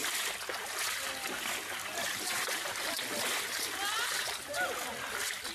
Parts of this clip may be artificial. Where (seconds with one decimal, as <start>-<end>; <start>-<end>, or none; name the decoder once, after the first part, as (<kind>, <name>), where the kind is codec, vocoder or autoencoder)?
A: none